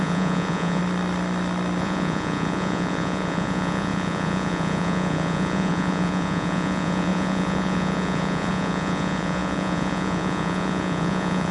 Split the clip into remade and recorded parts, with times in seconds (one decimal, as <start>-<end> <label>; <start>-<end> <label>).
0.0-0.8 remade; 0.8-1.8 recorded; 1.8-11.5 remade